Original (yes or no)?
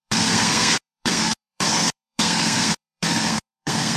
no